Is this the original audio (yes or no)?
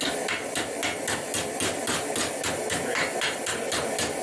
yes